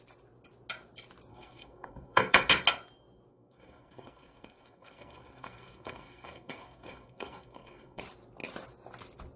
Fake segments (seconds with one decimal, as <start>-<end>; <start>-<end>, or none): 1.3-2.5; 3.3-8.0